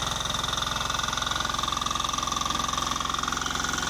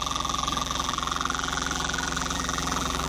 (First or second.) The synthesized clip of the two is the second